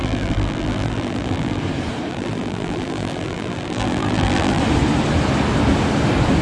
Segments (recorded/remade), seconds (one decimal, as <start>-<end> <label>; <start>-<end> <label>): 0.0-1.6 remade; 1.6-2.1 recorded; 2.1-4.6 remade; 4.6-6.4 recorded